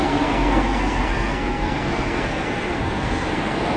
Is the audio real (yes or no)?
no